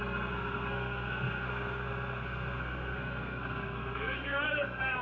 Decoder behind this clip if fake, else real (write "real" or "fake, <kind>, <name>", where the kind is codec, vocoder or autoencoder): fake, codec, SNAC